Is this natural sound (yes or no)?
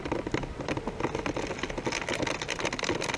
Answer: yes